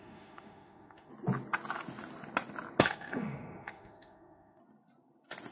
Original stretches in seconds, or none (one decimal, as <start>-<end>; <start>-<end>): 1.1-2.8; 4.6-5.5